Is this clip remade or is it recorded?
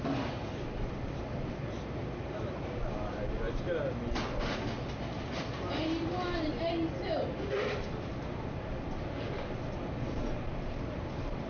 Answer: recorded